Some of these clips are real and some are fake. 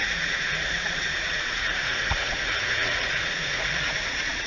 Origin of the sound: fake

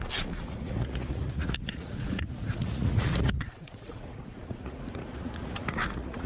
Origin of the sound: fake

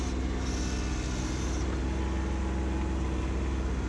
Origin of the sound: real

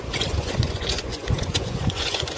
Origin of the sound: fake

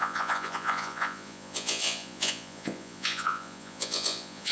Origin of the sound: fake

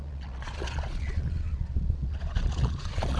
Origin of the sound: fake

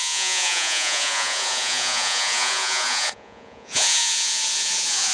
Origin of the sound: fake